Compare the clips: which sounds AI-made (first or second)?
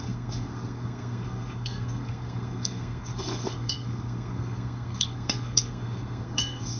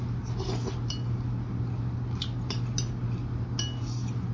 first